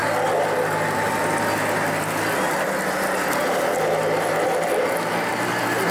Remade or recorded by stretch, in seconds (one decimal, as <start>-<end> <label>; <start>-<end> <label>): 0.0-5.9 recorded